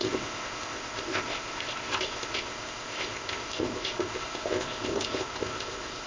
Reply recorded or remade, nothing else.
remade